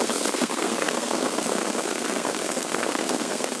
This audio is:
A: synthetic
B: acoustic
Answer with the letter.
A